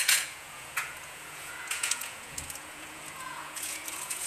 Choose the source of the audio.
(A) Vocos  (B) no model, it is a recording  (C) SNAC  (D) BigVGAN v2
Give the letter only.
A